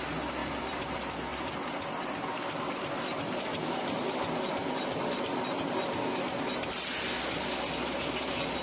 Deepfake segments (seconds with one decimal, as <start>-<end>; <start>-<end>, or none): 0.4-0.9; 1.3-5.2